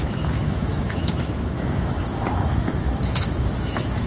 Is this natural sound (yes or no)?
no